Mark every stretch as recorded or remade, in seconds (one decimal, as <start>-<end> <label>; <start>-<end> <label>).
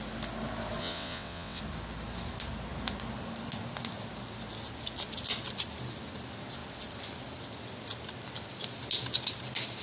0.0-0.8 recorded; 0.8-1.6 remade; 1.6-9.8 recorded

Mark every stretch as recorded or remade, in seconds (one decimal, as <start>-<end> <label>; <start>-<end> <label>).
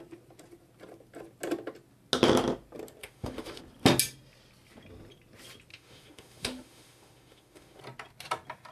0.0-3.0 recorded; 3.0-3.6 remade; 3.6-5.7 recorded; 5.7-7.8 remade; 7.8-8.7 recorded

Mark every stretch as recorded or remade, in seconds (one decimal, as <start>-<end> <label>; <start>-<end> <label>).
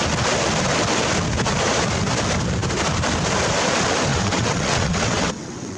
0.0-4.1 recorded; 4.1-5.8 remade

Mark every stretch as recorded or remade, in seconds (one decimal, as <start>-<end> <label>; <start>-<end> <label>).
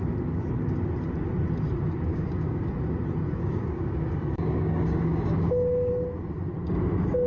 0.0-2.1 recorded; 2.1-2.7 remade; 2.7-3.4 recorded; 3.4-5.9 remade; 5.9-7.3 recorded